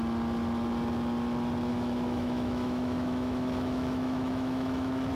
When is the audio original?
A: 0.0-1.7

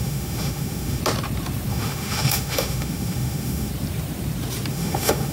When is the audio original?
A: 1.0-1.7; 3.7-4.7

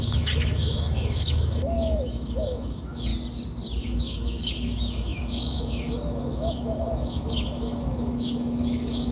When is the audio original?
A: 3.1-3.8

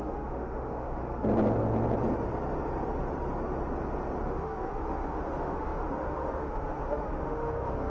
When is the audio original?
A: 1.0-4.2